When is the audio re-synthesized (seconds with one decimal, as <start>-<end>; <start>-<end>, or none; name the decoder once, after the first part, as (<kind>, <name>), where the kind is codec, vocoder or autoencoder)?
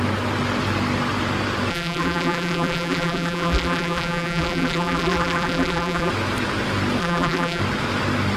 1.7-6.1 (vocoder, BigVGAN v2); 7.0-7.6